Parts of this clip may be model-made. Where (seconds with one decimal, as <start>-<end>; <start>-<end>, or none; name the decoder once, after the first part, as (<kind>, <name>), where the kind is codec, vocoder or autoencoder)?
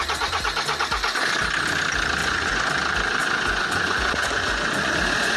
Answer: 2.2-2.7 (vocoder, Vocos); 3.2-4.9